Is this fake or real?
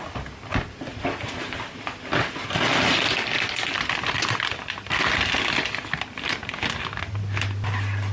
real